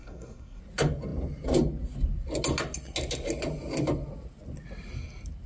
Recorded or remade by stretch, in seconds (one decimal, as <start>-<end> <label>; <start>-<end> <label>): 0.0-0.6 remade; 0.6-5.5 recorded